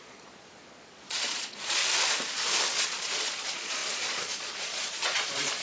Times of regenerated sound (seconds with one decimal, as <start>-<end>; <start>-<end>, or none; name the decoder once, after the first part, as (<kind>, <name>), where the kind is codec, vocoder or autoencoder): 0.0-1.8 (vocoder, Vocos); 2.7-5.6